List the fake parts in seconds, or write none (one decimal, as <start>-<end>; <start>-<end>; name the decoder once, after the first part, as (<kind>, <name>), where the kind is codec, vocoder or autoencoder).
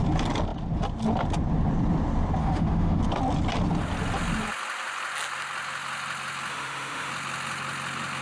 2.4-3.0 (autoencoder, DAC-VAE); 6.5-7.1